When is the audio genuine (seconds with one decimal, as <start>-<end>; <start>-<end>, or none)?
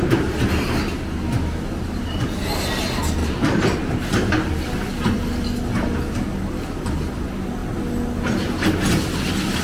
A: 0.0-3.2; 4.5-9.6